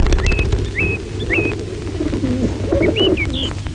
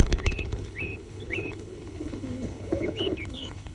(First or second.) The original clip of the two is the first